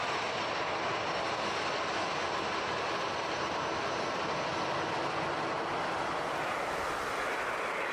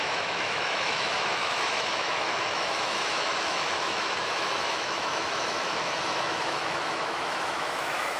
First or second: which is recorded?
first